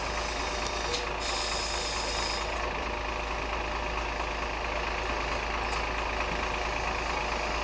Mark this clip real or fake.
real